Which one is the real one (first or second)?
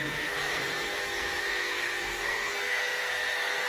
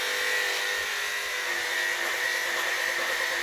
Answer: second